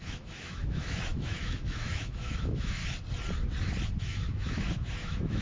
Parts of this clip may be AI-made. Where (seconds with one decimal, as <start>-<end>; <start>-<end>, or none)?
0.0-2.8; 4.0-5.4